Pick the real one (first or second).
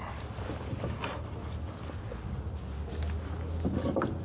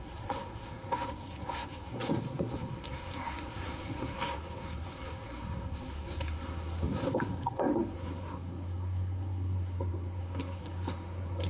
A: first